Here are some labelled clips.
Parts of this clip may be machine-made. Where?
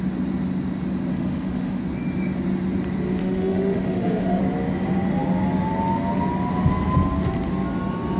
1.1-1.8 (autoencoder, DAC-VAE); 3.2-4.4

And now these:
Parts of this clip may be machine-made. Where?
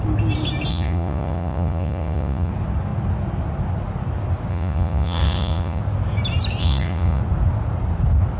0.7-2.5 (vocoder, Vocos); 4.5-5.8; 6.6-7.2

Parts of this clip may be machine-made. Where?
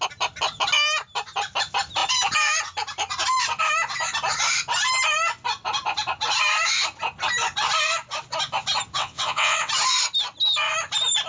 9.0-9.7 (vocoder, WaveNeXt)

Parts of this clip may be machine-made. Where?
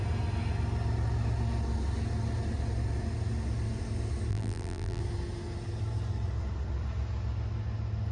4.3-5.0 (vocoder, BigVGAN v2)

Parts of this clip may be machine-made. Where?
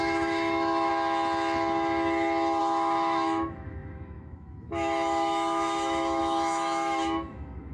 0.0-0.9 (autoencoder, DAC-VAE); 2.6-7.7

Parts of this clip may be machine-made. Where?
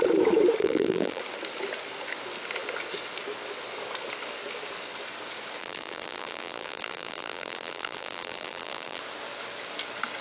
0.6-1.2 (vocoder, BigVGAN v2); 5.6-9.0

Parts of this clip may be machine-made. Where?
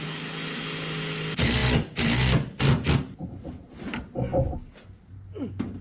none